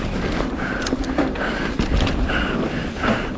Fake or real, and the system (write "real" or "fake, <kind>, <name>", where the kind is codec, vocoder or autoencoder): real